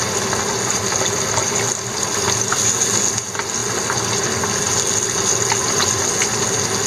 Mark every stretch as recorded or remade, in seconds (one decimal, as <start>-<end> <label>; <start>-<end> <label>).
0.0-6.9 recorded